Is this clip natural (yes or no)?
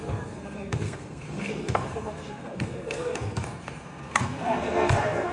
no